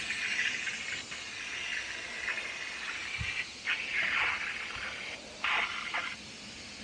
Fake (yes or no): no